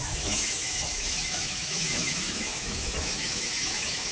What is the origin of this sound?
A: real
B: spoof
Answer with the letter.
B